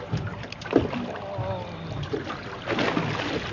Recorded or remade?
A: recorded